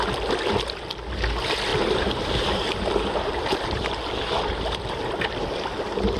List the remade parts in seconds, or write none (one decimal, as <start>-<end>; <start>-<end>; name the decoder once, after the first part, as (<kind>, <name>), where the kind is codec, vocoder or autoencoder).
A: 1.7-4.8 (vocoder, BigVGAN v2)